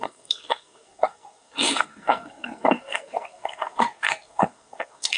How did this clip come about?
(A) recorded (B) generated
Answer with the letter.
B